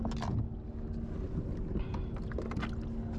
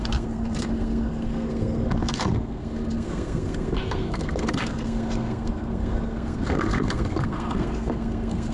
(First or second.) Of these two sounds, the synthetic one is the second